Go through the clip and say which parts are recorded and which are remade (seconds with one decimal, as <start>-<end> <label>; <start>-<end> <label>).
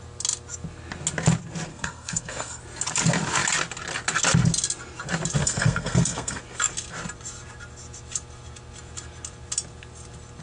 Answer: 0.0-1.7 recorded; 1.7-2.6 remade; 2.6-5.4 recorded; 5.4-6.4 remade; 6.4-10.4 recorded